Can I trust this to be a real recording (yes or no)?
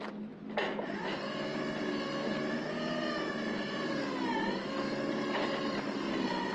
yes